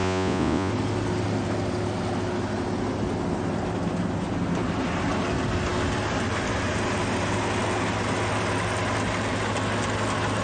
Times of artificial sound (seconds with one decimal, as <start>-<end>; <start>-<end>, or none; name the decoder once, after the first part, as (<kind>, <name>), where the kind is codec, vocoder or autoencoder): 0.0-0.7 (vocoder, Vocos)